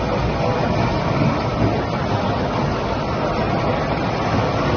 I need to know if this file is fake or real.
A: real